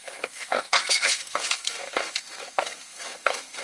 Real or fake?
fake